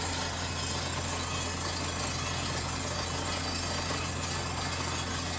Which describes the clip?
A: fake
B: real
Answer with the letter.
B